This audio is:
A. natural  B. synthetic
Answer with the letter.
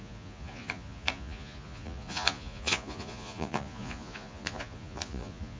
B